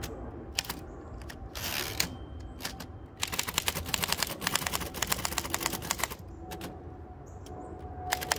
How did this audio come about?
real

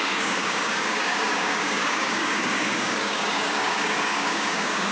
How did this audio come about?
fake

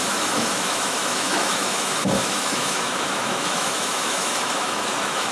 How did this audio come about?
fake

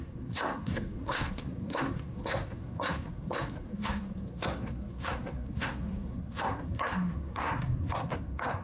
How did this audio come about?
fake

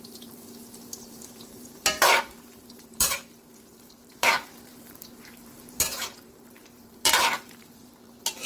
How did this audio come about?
fake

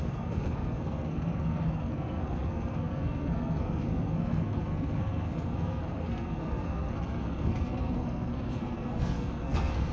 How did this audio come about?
fake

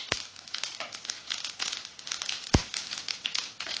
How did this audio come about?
real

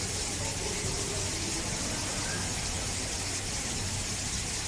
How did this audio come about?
real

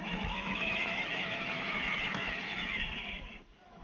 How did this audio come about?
fake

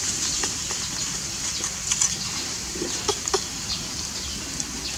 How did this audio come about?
real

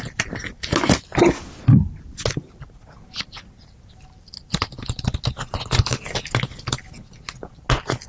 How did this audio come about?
real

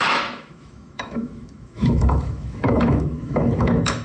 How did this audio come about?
fake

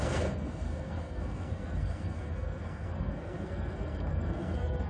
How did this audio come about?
fake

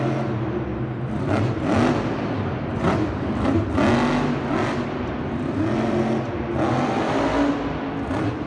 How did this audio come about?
real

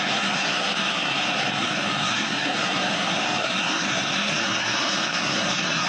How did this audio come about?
fake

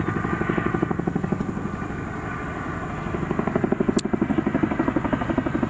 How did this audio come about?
real